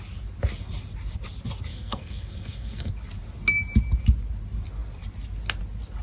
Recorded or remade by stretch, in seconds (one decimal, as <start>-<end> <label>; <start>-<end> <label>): 0.0-1.7 recorded; 1.7-2.9 remade; 2.9-6.0 recorded